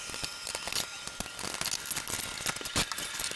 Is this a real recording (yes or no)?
yes